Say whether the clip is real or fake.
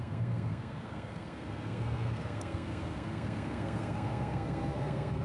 fake